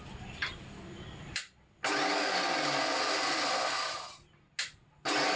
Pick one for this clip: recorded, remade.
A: recorded